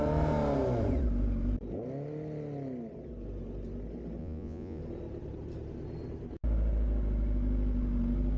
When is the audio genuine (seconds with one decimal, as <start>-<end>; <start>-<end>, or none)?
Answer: 0.0-4.2; 4.8-8.4